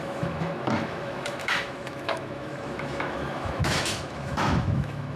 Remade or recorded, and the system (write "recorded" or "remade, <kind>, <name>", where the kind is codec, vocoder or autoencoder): remade, autoencoder, DAC-VAE